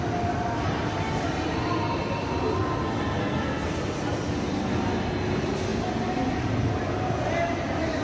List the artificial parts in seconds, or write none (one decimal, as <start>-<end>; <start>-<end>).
3.2-3.7